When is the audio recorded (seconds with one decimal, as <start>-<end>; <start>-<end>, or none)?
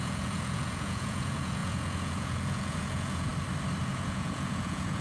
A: 3.3-3.8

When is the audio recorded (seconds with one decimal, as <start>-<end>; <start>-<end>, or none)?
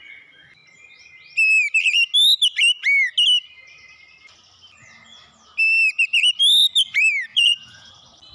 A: 0.0-7.3; 7.9-8.3